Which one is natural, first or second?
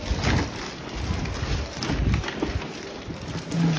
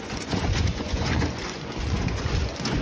first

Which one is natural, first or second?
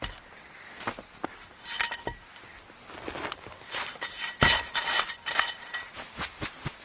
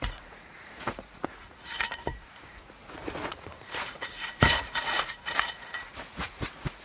first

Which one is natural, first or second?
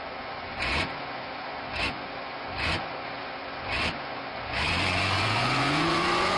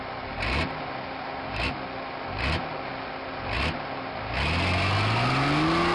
second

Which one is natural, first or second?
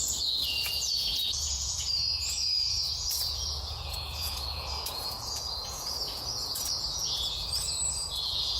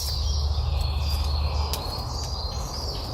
second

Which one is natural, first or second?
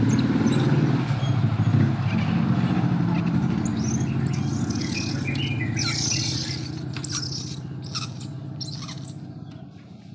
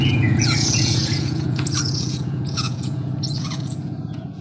first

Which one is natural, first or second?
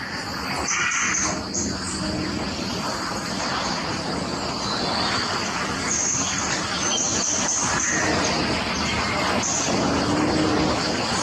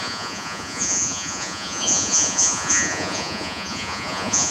first